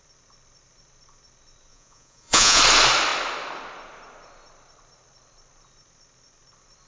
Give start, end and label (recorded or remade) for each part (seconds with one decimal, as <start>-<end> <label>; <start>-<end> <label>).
0.0-1.7 recorded; 1.7-2.6 remade; 2.6-6.9 recorded